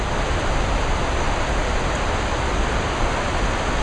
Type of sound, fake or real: real